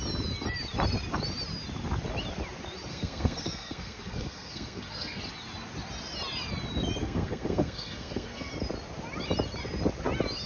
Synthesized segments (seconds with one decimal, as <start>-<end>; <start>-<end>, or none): 2.9-5.2; 7.0-8.5